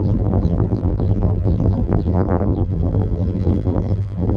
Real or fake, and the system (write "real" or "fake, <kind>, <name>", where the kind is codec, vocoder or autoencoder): fake, vocoder, BigVGAN v2